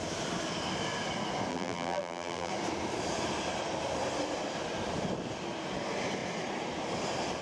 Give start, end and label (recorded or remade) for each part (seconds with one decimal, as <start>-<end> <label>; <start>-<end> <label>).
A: 0.0-1.5 recorded; 1.5-2.5 remade; 2.5-7.4 recorded